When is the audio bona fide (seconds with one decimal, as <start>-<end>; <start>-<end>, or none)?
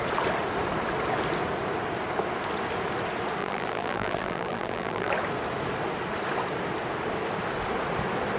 0.0-3.4; 5.1-8.4